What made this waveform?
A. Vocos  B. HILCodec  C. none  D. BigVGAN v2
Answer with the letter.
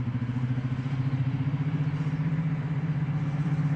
D